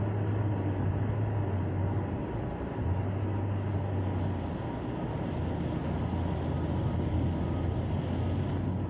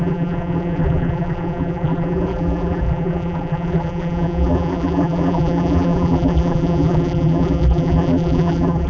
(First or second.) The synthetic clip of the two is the second